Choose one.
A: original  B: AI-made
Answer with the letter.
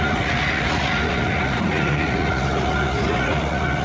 B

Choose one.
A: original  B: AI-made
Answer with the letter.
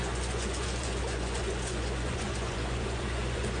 B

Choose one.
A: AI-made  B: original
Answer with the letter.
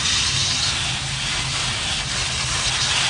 B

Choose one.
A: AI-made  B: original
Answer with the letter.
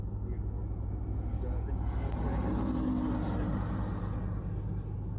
B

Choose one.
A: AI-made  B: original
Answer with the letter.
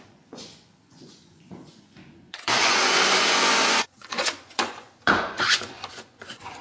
A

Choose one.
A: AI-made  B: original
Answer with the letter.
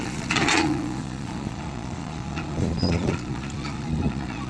A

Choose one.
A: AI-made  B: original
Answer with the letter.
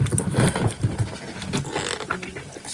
B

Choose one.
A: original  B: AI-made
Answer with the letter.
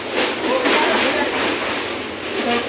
A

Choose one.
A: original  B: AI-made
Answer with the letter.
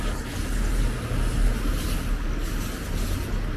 A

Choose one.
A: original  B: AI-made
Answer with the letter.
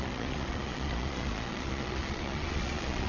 B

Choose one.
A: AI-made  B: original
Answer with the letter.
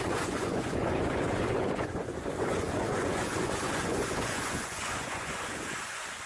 A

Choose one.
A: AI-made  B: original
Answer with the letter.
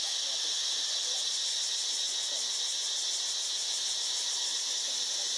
B